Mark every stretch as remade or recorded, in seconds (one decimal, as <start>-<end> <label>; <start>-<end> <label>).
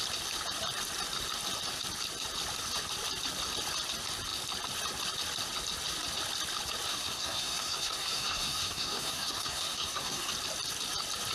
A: 0.0-6.9 recorded; 6.9-10.3 remade; 10.3-11.3 recorded